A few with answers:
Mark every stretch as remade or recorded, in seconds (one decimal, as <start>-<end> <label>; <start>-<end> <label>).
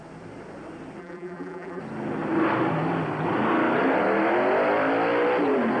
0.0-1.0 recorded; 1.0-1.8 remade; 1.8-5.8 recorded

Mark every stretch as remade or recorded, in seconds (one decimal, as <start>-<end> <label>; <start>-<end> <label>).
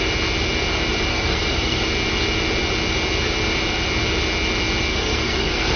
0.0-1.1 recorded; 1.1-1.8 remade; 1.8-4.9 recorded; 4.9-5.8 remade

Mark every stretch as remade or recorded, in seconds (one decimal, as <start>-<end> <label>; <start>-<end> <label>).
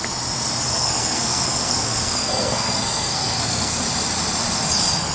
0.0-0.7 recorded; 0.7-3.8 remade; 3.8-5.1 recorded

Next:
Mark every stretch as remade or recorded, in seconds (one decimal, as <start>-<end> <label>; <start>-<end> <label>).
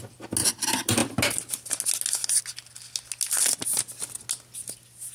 0.0-5.1 recorded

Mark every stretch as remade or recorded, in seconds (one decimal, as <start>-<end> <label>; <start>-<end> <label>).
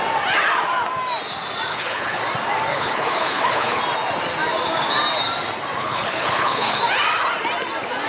0.0-1.7 recorded; 1.7-2.2 remade; 2.2-2.7 recorded; 2.7-3.8 remade; 3.8-5.8 recorded; 5.8-6.8 remade; 6.8-8.1 recorded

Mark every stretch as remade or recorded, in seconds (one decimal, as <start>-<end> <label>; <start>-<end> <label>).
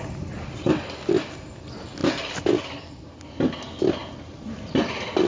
0.0-5.3 recorded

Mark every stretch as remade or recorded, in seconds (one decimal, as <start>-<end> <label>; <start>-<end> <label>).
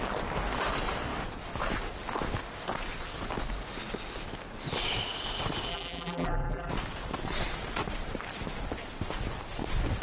0.0-5.7 recorded; 5.7-6.7 remade; 6.7-10.0 recorded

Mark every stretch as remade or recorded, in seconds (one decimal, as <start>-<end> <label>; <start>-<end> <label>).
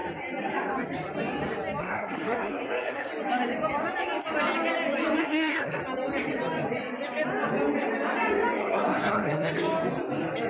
0.0-1.8 recorded; 1.8-3.1 remade; 3.1-5.2 recorded; 5.2-5.8 remade; 5.8-8.6 recorded; 8.6-9.5 remade; 9.5-10.5 recorded